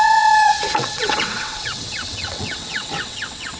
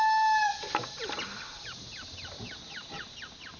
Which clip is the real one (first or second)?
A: second